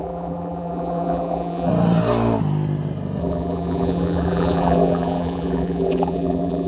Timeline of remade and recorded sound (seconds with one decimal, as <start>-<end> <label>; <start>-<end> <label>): 0.0-1.7 remade; 1.7-3.2 recorded; 3.2-6.7 remade